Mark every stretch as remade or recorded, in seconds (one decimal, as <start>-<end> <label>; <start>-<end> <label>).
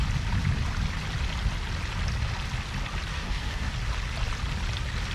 0.0-3.1 recorded; 3.1-3.7 remade; 3.7-5.1 recorded